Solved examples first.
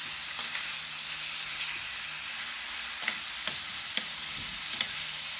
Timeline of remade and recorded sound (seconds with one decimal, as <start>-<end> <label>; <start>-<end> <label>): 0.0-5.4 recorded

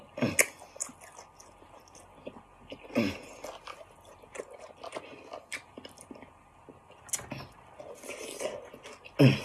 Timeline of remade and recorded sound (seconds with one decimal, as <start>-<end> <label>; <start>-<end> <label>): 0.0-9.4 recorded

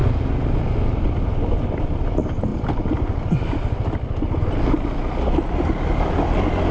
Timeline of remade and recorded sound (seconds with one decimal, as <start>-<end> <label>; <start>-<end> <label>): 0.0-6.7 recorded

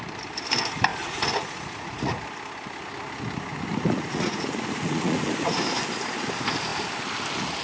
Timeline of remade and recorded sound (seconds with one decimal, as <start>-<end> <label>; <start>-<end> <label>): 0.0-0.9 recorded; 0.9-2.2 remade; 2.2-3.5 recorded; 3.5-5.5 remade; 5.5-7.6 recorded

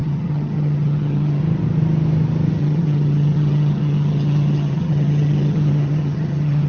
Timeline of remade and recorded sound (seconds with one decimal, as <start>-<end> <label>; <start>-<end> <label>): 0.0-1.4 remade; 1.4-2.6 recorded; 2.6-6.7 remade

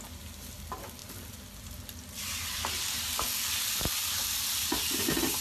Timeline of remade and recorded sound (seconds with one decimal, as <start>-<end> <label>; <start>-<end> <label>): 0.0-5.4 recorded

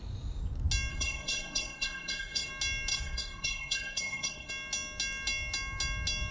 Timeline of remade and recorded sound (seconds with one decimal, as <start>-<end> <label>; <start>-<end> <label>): 0.0-0.9 recorded; 0.9-2.5 remade; 2.5-2.9 recorded; 2.9-4.5 remade; 4.5-6.3 recorded